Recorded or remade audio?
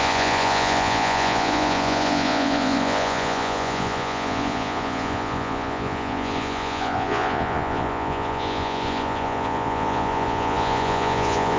remade